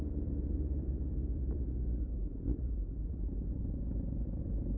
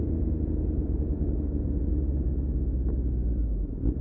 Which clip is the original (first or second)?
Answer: second